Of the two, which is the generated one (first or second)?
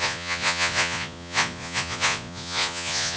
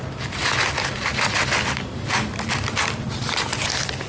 first